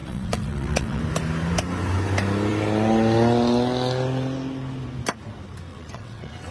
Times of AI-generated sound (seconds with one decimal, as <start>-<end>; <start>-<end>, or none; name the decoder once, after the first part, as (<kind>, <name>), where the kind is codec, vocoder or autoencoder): 0.0-1.0 (vocoder, WaveNeXt); 5.7-6.5